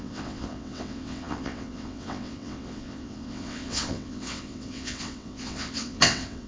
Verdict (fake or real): fake